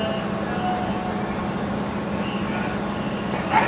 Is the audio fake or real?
real